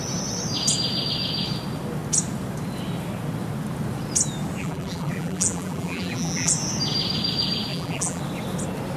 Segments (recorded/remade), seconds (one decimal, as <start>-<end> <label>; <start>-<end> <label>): 0.0-4.6 recorded; 4.6-6.5 remade; 6.5-7.7 recorded; 7.7-8.2 remade; 8.2-9.0 recorded